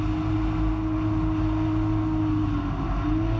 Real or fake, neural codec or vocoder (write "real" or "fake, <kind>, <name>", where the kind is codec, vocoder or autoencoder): real